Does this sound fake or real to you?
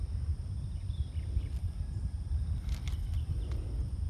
real